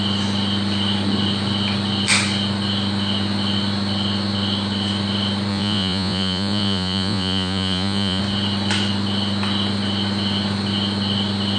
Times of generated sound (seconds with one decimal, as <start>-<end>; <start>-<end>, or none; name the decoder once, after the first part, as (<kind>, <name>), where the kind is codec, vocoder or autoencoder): 5.5-8.2 (vocoder, Vocos)